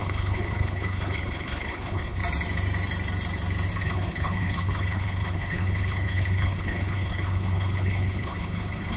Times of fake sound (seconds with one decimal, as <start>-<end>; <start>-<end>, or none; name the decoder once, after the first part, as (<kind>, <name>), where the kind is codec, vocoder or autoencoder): 0.0-2.2 (codec, HILCodec); 3.8-9.0